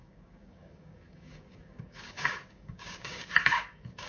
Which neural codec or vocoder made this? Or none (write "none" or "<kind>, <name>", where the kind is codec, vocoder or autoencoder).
codec, DAC